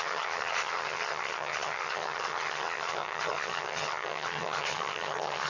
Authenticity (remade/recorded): remade